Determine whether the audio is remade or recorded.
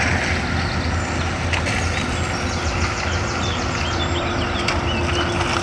recorded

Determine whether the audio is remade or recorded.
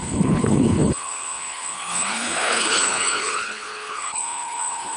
remade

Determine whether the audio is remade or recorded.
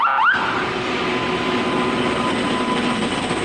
recorded